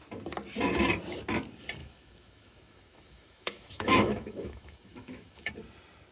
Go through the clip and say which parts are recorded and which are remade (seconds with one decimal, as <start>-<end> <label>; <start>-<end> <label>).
0.0-1.8 recorded; 1.8-5.5 remade; 5.5-6.1 recorded